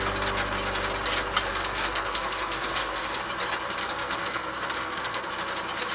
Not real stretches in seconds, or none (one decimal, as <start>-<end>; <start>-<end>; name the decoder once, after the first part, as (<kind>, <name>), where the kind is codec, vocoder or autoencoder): 1.5-3.1 (codec, SNAC); 3.8-5.3